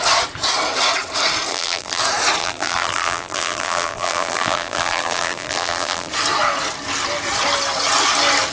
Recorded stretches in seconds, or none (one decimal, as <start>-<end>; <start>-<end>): 0.0-1.5; 2.0-2.4; 6.1-8.5